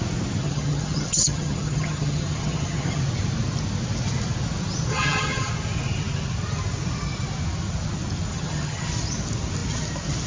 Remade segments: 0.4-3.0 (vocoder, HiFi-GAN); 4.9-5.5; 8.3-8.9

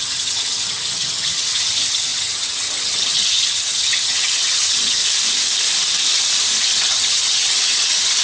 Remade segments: 0.0-5.0 (vocoder, HiFi-GAN); 6.6-8.2

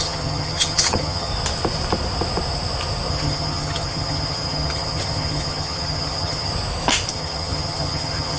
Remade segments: 0.0-1.3 (vocoder, HiFi-GAN); 3.1-6.5; 7.1-8.4

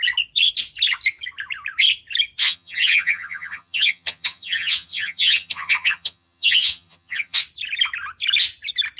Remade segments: 2.4-7.4 (vocoder, HiFi-GAN)

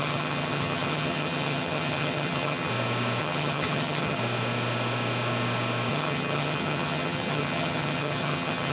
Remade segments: 0.0-2.7 (vocoder, HiFi-GAN); 3.2-4.2; 5.9-8.7

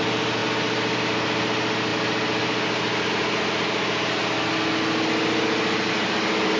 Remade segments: none

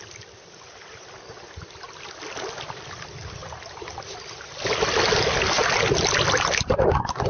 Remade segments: none